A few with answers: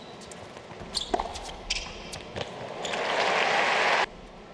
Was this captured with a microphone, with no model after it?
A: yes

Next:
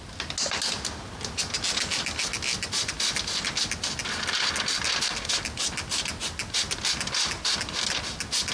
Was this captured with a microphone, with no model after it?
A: yes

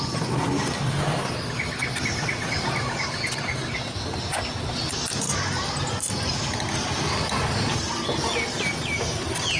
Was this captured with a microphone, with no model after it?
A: yes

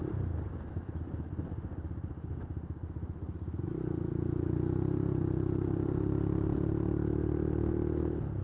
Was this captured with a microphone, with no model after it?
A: yes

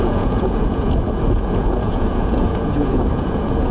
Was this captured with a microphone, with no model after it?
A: no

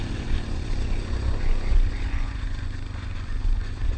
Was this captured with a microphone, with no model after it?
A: no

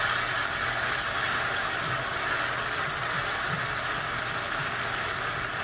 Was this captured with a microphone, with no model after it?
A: yes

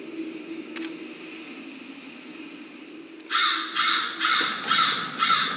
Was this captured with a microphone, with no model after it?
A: yes